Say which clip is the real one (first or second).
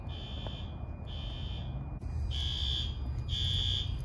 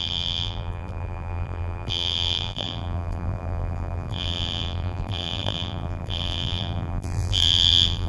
first